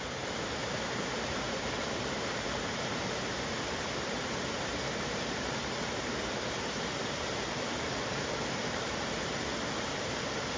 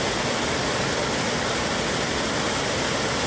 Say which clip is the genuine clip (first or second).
second